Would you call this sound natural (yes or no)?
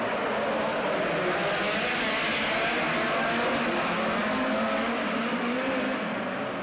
yes